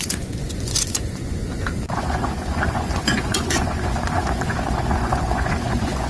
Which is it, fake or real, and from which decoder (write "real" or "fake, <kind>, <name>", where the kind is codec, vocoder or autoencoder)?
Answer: fake, vocoder, Vocos